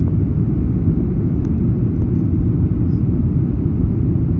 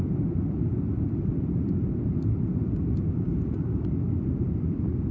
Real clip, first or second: first